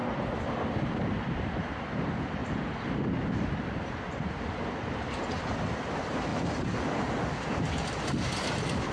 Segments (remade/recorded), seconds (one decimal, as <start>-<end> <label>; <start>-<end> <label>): 0.0-2.4 remade; 2.4-3.1 recorded; 3.1-6.3 remade; 6.3-8.3 recorded; 8.3-8.9 remade